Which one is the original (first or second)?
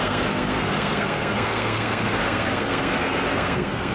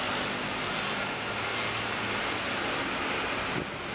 second